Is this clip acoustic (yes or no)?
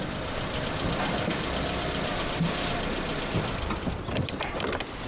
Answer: no